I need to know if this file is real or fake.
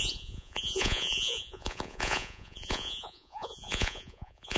fake